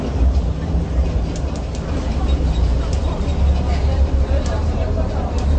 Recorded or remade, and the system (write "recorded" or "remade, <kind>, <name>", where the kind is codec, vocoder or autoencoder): remade, vocoder, BigVGAN v2